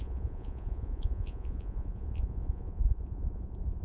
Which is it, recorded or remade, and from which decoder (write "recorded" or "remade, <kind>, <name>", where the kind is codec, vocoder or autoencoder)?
remade, vocoder, Vocos